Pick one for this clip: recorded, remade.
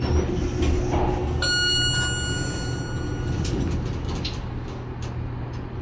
recorded